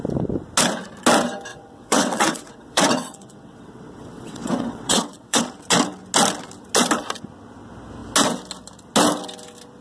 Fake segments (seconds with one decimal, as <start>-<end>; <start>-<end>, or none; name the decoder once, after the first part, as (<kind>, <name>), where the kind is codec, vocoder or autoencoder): 1.5-5.4 (vocoder, WaveNeXt)